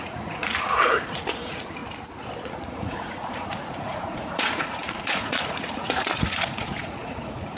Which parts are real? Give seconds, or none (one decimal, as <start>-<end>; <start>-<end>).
1.8-2.4